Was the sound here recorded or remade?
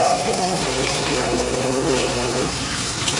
remade